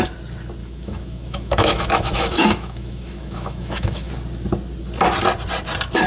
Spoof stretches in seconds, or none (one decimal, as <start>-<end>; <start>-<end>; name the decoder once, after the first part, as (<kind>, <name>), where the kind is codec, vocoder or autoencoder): 0.6-4.1 (autoencoder, DAC-VAE)